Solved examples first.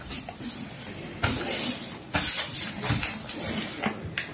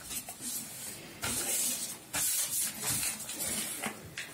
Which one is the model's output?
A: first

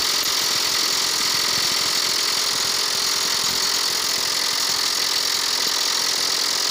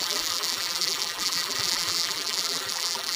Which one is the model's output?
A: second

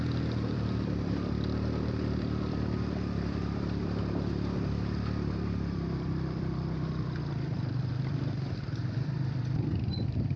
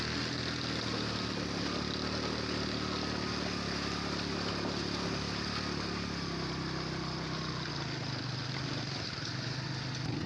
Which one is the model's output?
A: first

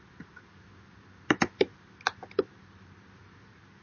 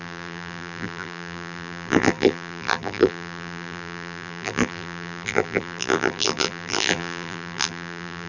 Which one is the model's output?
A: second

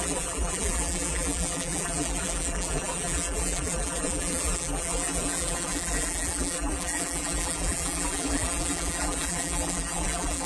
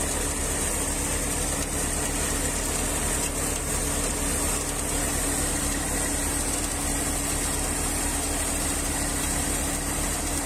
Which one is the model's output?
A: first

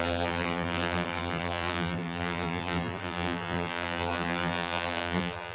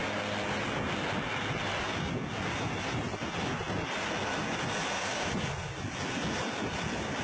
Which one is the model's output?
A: first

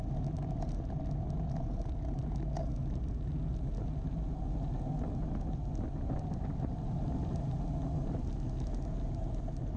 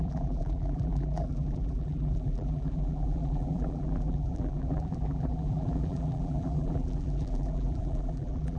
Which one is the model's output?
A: second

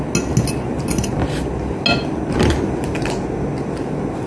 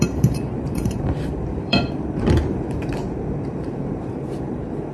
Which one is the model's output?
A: second